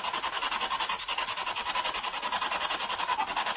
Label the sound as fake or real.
real